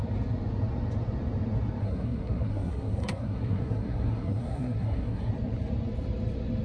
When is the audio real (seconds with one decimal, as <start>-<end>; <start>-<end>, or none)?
0.0-1.8; 5.3-6.6